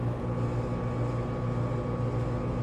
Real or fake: real